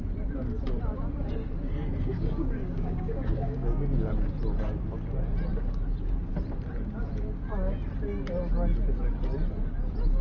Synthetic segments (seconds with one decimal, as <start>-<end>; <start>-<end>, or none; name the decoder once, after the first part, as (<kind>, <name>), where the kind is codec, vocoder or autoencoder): 1.8-4.1 (codec, DAC)